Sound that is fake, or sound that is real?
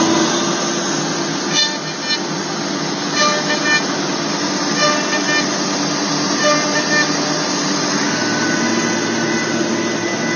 real